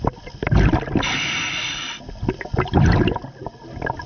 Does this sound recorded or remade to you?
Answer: recorded